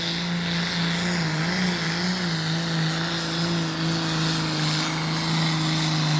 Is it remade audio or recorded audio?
recorded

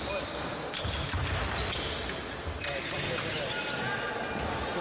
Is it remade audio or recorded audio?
recorded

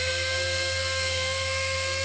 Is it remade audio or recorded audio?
remade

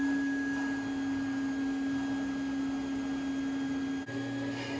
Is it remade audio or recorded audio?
recorded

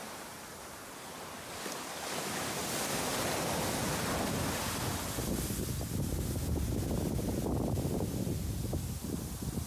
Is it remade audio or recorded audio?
recorded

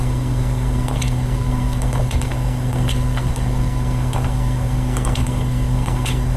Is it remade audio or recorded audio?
remade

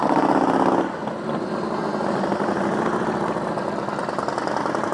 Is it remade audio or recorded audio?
recorded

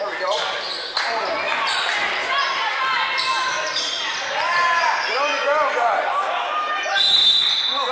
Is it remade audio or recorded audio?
recorded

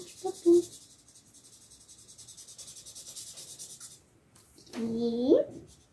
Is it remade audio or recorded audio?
recorded